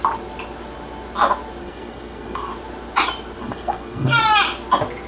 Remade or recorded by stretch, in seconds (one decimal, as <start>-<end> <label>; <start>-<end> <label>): 0.0-1.6 recorded; 1.6-2.5 remade; 2.5-3.4 recorded; 3.4-4.2 remade; 4.2-5.1 recorded